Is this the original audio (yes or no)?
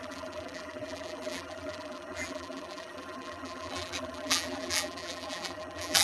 no